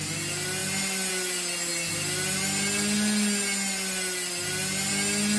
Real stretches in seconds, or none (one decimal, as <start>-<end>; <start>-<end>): 0.0-5.4